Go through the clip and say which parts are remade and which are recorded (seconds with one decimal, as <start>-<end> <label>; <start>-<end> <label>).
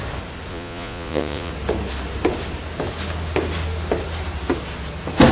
0.0-0.5 recorded; 0.5-1.5 remade; 1.5-5.3 recorded